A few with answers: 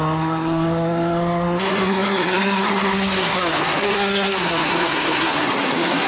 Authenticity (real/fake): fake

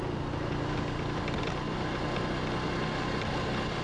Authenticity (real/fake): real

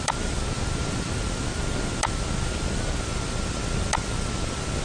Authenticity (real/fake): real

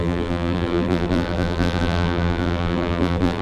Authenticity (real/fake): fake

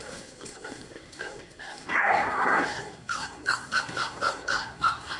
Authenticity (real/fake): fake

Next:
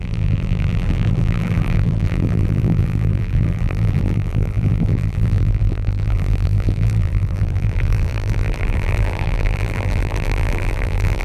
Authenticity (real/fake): fake